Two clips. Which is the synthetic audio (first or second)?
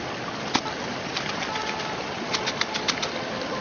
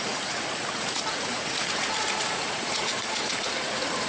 second